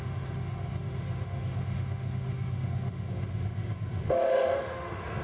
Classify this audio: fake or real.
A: fake